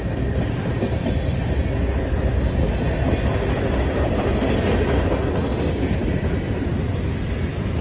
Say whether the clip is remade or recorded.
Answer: recorded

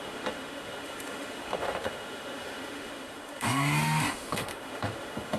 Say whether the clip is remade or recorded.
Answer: remade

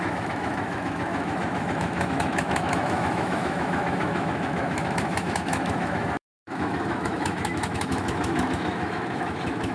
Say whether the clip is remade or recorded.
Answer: remade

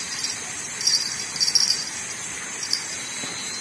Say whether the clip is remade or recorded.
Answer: recorded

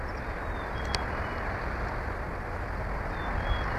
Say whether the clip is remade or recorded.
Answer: recorded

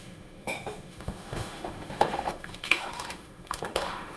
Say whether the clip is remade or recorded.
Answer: remade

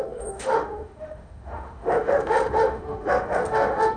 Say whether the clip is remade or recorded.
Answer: remade